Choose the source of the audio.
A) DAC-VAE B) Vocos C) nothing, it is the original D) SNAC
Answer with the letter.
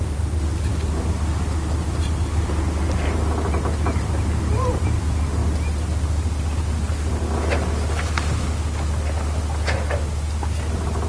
C